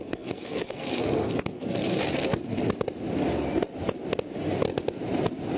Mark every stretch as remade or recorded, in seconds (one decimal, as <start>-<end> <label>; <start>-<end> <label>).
0.0-2.0 remade; 2.0-5.6 recorded